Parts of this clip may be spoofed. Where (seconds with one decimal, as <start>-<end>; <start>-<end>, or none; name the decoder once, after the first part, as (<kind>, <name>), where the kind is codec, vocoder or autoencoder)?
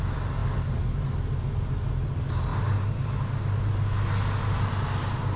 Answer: none